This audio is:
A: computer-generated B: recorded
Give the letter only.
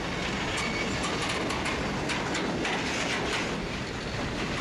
B